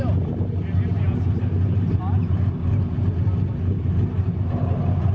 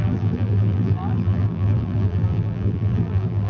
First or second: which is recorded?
first